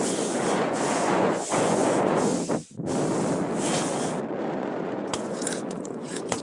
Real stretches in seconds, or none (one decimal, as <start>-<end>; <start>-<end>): 2.3-4.5